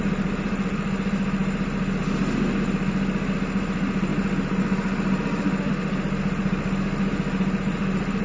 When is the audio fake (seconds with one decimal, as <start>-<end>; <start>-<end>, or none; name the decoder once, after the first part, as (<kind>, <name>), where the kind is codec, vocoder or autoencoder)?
none